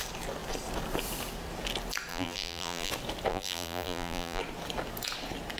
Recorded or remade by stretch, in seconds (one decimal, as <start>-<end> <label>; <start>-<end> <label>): 0.0-2.1 recorded; 2.1-2.9 remade; 2.9-3.3 recorded; 3.3-4.4 remade; 4.4-5.6 recorded